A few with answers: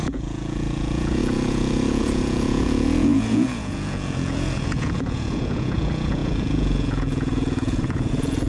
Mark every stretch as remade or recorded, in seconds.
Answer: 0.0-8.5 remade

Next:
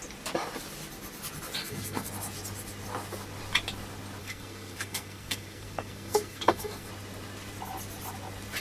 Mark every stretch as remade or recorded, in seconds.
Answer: 0.0-1.6 recorded; 1.6-2.1 remade; 2.1-4.2 recorded; 4.2-6.9 remade; 6.9-8.6 recorded

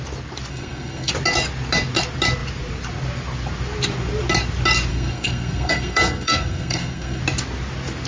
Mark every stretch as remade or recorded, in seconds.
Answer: 0.0-0.5 recorded; 0.5-1.1 remade; 1.1-4.9 recorded; 4.9-7.2 remade; 7.2-8.1 recorded